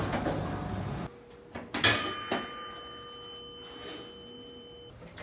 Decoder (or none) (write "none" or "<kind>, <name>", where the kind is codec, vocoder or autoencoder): none